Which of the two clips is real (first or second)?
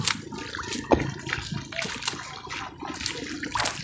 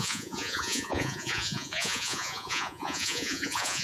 first